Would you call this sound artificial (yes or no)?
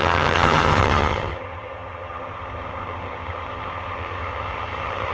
yes